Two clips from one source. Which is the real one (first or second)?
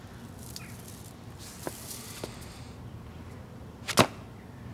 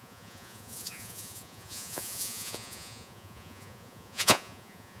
first